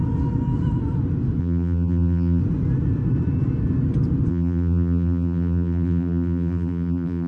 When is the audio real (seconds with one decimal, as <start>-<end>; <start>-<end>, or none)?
0.0-1.4; 2.4-4.3